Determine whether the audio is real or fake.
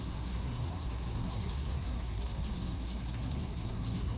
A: fake